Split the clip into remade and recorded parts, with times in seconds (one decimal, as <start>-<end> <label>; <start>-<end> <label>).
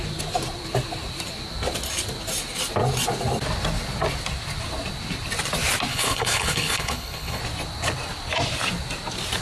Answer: 0.0-5.9 recorded; 5.9-7.4 remade; 7.4-9.4 recorded